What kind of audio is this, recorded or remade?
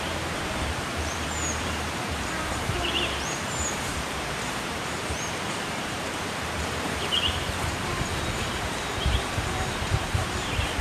remade